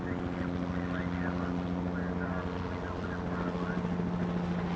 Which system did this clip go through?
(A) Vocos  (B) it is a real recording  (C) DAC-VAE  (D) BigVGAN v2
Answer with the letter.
B